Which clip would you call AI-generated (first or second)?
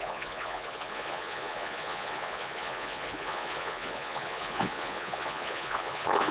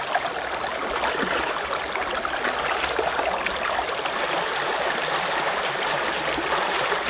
first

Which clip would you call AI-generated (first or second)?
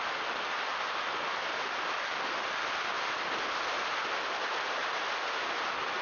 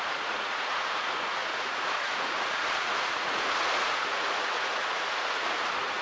second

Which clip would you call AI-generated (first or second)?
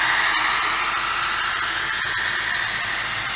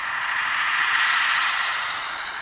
second